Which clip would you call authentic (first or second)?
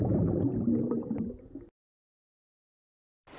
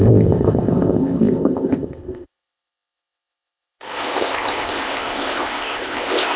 first